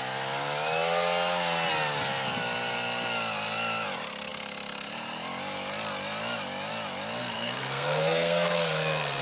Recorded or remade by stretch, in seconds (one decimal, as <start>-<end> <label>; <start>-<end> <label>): 0.0-7.2 recorded; 7.2-9.2 remade